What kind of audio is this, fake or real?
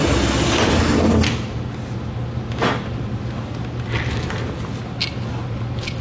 real